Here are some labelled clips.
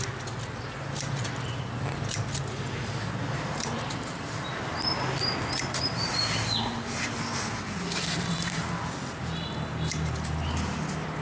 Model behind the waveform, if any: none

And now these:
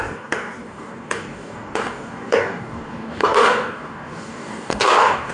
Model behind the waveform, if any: codec, DAC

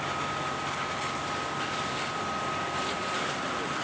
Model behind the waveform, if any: none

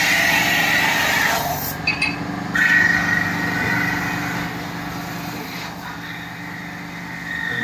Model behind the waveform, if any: none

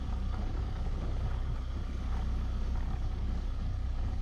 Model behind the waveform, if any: codec, DAC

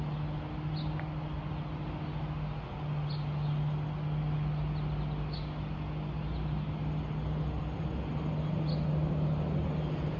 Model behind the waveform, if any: none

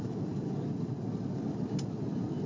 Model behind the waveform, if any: none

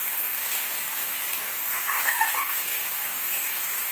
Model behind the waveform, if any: codec, DAC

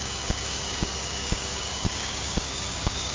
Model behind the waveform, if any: codec, DAC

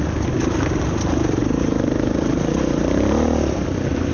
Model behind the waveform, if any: none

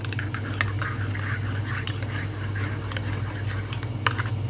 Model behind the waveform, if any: none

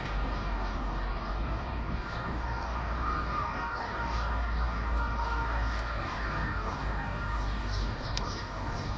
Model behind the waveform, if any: codec, DAC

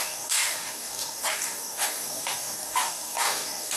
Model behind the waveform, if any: codec, DAC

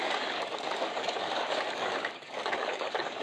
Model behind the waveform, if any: codec, DAC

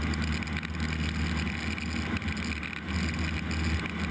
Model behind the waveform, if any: none